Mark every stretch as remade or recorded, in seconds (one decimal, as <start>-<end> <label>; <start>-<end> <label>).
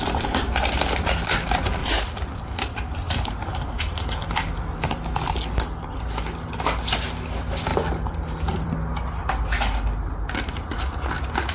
0.0-1.8 recorded; 1.8-4.6 remade; 4.6-7.7 recorded; 7.7-8.7 remade; 8.7-11.5 recorded